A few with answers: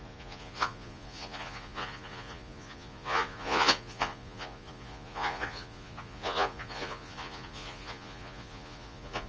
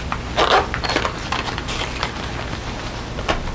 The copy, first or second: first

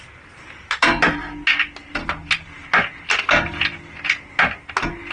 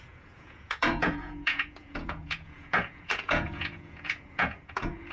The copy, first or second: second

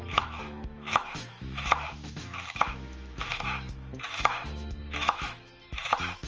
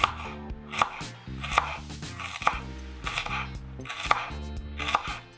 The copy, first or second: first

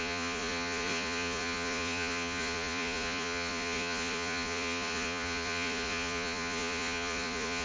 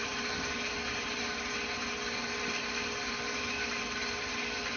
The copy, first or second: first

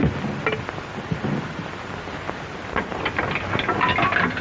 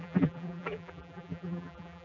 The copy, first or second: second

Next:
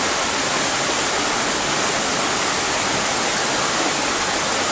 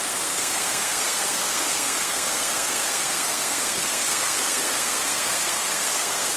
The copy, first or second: second